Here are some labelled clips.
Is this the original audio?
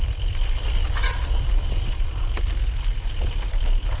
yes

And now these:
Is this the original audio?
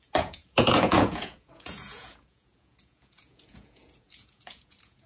no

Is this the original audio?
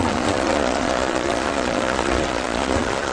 no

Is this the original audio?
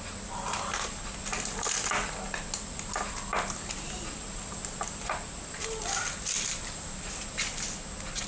yes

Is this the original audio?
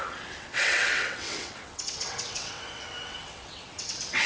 no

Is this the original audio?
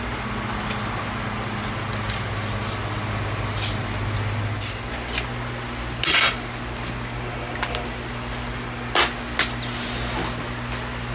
yes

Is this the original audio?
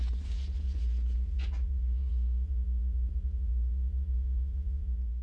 no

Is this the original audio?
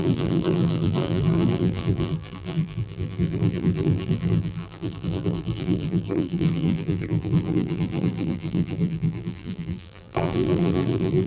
no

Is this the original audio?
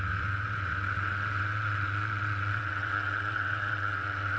no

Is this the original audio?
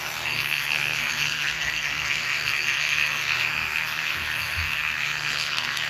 no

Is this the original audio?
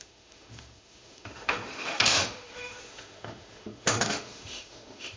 no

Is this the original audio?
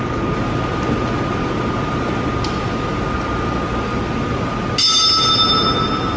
yes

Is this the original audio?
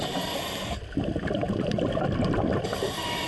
yes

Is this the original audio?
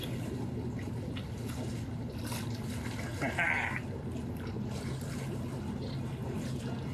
yes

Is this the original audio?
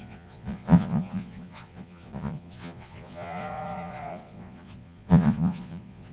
no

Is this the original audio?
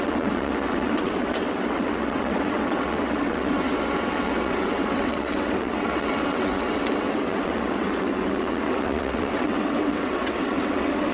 no